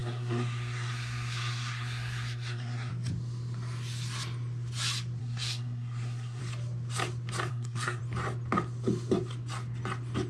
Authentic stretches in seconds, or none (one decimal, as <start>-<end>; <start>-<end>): 2.9-5.2; 6.4-7.5; 8.0-10.3